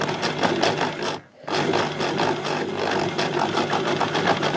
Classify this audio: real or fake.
real